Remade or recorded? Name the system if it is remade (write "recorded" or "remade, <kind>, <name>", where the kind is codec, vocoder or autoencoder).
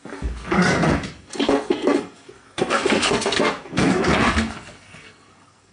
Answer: remade, codec, SNAC